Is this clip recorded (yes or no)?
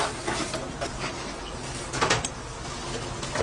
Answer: yes